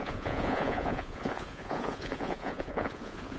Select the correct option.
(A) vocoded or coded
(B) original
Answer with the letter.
A